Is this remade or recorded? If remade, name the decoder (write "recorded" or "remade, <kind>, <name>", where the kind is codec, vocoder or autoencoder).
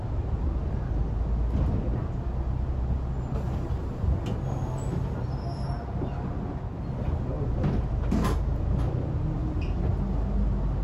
recorded